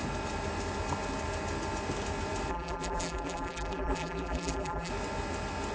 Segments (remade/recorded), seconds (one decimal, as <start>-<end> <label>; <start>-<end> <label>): 0.0-2.5 recorded; 2.5-4.9 remade; 4.9-5.7 recorded